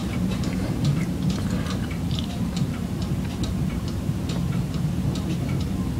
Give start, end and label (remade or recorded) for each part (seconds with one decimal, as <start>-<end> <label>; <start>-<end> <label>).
0.0-3.0 remade; 3.0-3.7 recorded; 3.7-6.0 remade